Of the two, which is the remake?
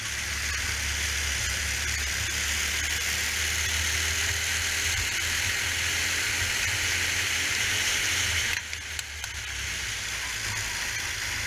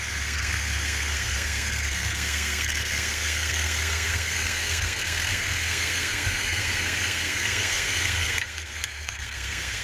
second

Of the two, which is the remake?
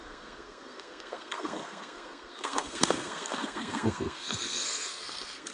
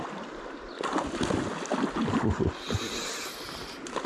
first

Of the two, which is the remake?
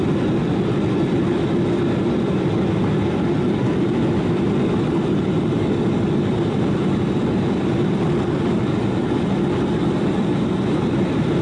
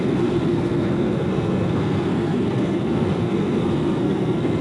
second